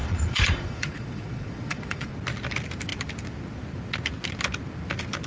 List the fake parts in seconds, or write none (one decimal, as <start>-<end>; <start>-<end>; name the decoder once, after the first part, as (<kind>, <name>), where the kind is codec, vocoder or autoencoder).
0.0-2.1 (vocoder, Vocos)